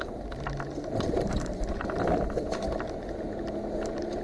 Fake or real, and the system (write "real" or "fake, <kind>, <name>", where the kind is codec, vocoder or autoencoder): real